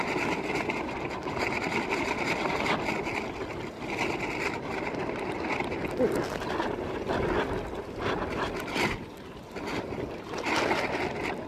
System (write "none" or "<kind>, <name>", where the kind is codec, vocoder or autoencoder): none